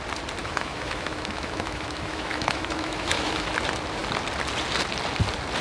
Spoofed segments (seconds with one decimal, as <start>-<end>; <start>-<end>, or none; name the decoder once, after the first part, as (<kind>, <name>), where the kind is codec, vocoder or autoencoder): 0.4-3.5 (autoencoder, DAC-VAE)